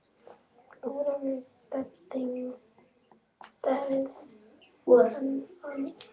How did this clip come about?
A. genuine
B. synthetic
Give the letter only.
A